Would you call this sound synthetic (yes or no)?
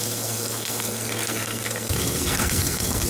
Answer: yes